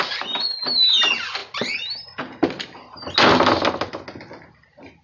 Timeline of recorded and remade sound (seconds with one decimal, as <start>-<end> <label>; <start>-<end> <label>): 0.0-5.0 recorded